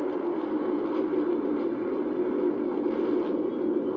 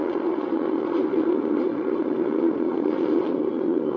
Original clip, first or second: first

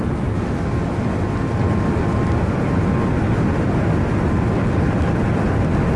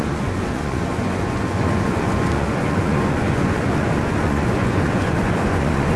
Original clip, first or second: first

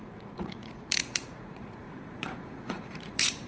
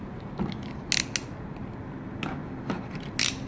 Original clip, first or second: second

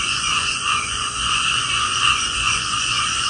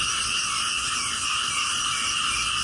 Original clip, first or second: second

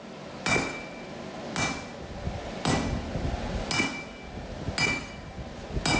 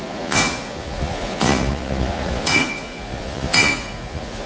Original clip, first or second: first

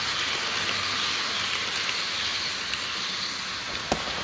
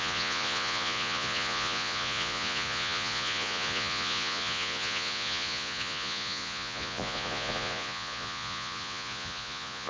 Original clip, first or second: first